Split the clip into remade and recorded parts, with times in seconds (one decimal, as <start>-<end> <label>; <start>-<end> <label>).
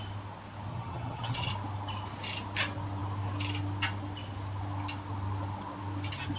0.0-0.7 recorded; 0.7-1.5 remade; 1.5-6.4 recorded